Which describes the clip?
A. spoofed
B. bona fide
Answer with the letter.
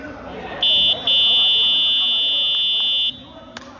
B